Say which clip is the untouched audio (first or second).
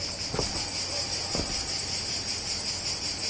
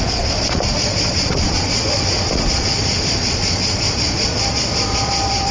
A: first